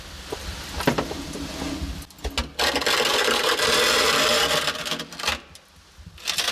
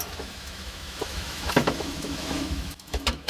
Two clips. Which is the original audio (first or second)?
first